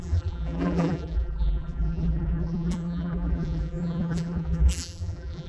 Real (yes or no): no